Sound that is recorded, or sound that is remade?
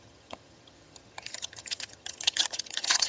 remade